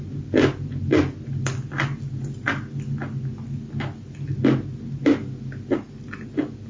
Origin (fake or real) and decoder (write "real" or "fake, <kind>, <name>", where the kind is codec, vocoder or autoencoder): real